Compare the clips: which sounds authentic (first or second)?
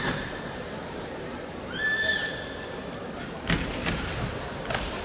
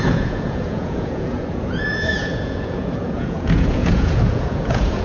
first